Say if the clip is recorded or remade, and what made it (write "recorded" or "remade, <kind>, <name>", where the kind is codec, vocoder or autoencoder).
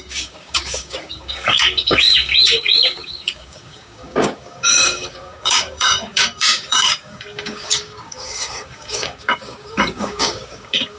remade, codec, DAC